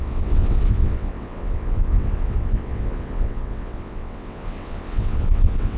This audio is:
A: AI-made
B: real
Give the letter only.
A